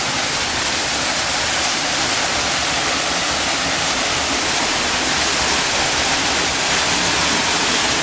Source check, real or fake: real